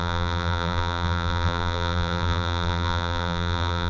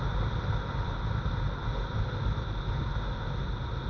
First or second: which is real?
second